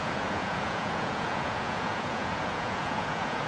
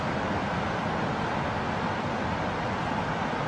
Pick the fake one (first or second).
first